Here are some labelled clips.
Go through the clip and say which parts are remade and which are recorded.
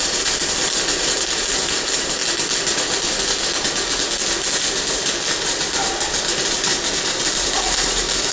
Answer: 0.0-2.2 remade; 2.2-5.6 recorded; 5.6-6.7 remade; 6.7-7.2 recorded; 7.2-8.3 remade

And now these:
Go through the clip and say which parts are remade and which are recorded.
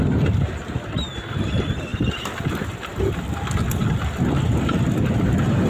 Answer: 0.0-1.9 recorded; 1.9-2.9 remade; 2.9-5.7 recorded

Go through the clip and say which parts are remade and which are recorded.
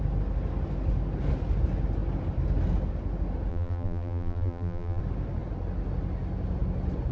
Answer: 0.0-3.5 recorded; 3.5-5.0 remade; 5.0-7.1 recorded